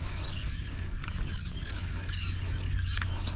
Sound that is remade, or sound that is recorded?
remade